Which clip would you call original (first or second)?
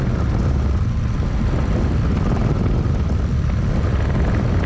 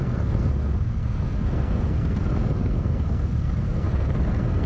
first